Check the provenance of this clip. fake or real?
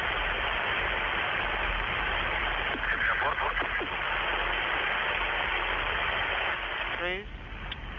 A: real